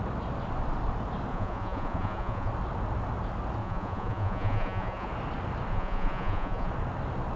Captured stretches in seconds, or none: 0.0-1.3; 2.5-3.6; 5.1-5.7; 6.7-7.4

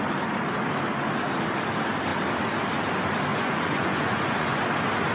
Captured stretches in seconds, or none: 0.0-3.3; 4.6-5.1

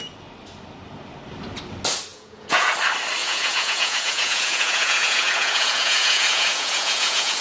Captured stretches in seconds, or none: 0.0-2.1; 2.7-3.2